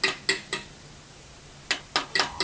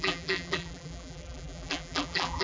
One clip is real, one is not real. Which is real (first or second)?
first